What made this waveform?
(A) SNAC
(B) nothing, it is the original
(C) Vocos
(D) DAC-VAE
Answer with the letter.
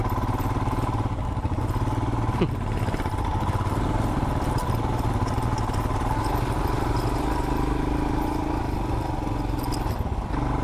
B